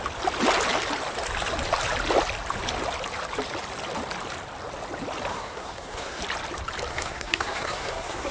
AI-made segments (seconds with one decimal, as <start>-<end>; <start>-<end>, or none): 5.3-6.2; 6.9-8.3